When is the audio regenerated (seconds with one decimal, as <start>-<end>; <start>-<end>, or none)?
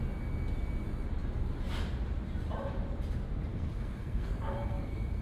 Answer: 3.5-5.2